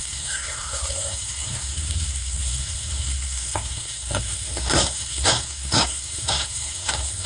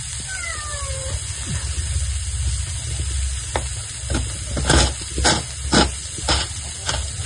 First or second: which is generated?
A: first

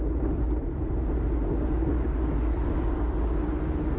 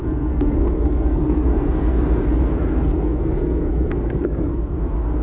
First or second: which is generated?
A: second